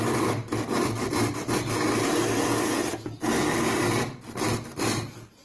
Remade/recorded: recorded